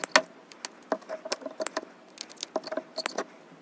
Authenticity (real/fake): real